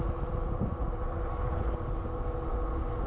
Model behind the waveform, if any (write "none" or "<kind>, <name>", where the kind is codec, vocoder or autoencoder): none